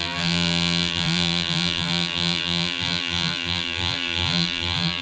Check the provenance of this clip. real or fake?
fake